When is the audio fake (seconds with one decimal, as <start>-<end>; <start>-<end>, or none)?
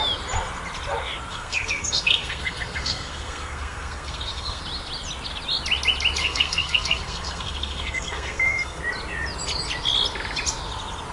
1.3-4.6; 6.2-8.8